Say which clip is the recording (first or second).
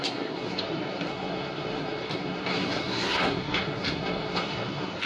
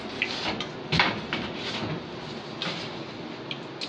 second